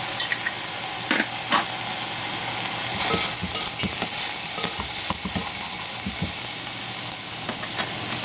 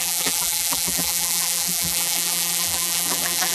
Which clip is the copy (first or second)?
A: second